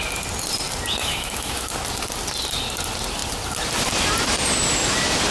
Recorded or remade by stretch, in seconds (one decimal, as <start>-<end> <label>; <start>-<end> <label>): 0.0-1.0 recorded; 1.0-1.7 remade; 1.7-5.3 recorded